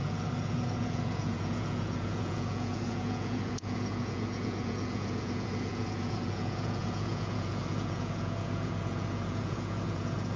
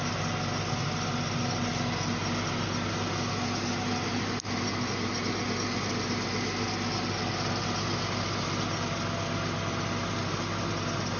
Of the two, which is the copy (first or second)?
first